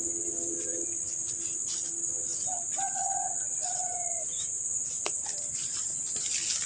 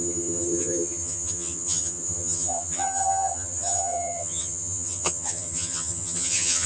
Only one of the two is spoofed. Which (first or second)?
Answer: second